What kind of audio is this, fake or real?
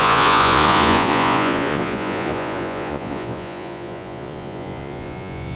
fake